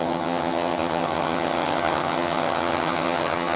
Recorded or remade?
remade